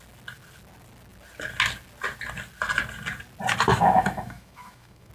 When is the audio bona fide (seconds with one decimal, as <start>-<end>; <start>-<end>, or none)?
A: 0.0-3.7